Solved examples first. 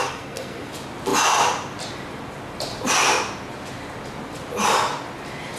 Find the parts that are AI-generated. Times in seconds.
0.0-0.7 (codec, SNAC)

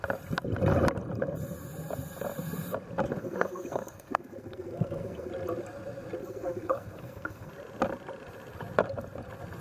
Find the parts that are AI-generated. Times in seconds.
3.2-5.3 (codec, SNAC); 6.2-7.5

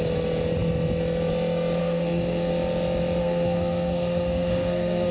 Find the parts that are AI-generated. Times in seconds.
1.8-2.5 (codec, SNAC); 3.2-5.1

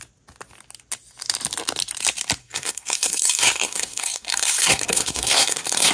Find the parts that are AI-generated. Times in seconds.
2.4-5.9 (codec, SNAC)

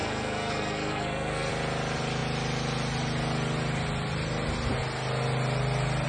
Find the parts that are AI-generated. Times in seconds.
0.0-1.5 (codec, SNAC)

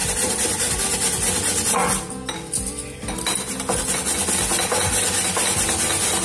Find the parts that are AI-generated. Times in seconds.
none

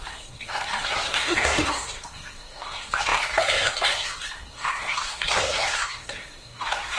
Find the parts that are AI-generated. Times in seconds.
0.0-7.0 (codec, SNAC)

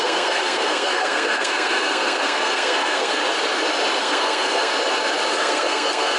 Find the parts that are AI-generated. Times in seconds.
0.0-3.2 (codec, SNAC); 4.0-4.7; 5.3-6.2